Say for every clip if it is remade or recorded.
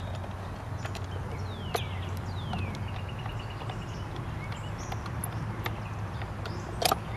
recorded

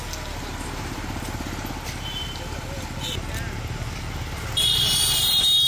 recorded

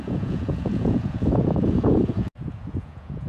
remade